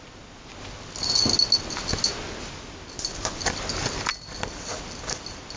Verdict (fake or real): real